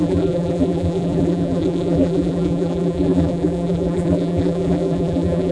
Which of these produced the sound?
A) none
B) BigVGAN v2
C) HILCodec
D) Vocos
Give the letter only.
B